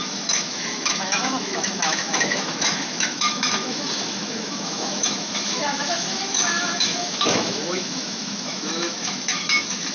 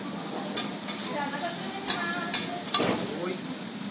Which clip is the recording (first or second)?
second